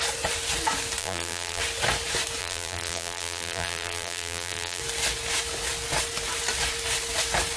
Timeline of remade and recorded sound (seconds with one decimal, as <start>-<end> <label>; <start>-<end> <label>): 0.0-1.0 recorded; 1.0-1.6 remade; 1.6-2.4 recorded; 2.4-4.8 remade; 4.8-7.6 recorded